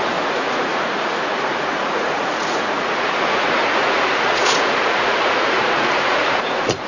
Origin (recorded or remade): remade